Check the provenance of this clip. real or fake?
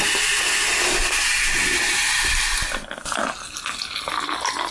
real